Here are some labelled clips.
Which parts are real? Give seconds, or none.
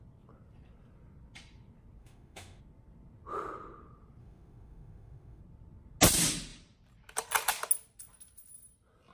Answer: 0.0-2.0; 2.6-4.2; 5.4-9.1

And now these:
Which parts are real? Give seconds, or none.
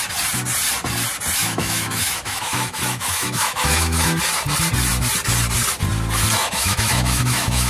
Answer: 0.0-1.4; 4.2-6.4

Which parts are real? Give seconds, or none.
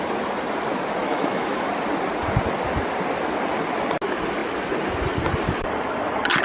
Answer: 0.0-1.0; 1.7-6.4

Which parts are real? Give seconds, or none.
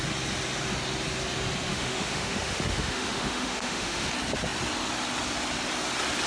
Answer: 0.0-1.7; 4.1-6.3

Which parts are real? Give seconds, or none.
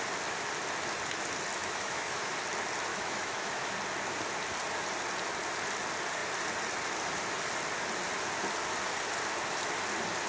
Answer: 0.0-1.6; 2.3-2.9; 3.7-10.3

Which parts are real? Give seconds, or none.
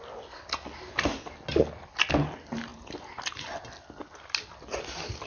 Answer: 0.0-5.3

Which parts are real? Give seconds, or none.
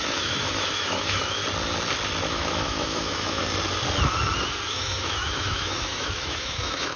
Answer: 1.4-2.3; 3.4-4.7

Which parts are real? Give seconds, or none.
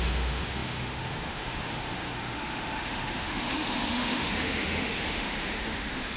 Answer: none